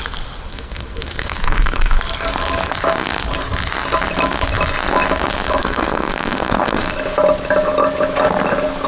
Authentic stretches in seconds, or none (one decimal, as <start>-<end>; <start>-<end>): 0.0-0.5; 2.0-5.6; 6.8-8.9